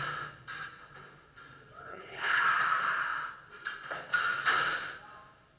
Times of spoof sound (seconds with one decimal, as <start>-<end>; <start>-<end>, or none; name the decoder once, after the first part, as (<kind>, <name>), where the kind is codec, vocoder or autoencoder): 1.8-2.4 (codec, HILCodec)